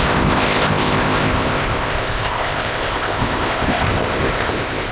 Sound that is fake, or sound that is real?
fake